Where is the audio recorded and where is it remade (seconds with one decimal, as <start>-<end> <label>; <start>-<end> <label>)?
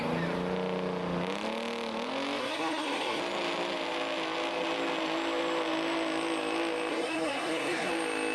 0.0-2.4 recorded; 2.4-3.2 remade; 3.2-6.9 recorded; 6.9-7.9 remade; 7.9-8.3 recorded